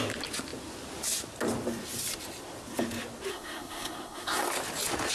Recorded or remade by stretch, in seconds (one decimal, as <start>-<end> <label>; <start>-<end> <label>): 0.0-3.3 recorded; 3.3-4.5 remade; 4.5-5.1 recorded